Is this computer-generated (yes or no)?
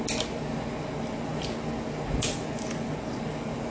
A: no